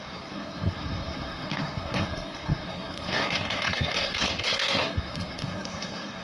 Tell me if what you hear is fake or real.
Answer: fake